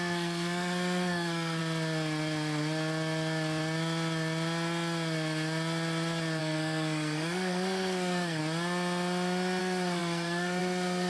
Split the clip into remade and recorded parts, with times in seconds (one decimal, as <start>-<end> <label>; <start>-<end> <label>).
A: 0.0-1.6 remade; 1.6-6.4 recorded; 6.4-8.4 remade; 8.4-9.6 recorded; 9.6-11.1 remade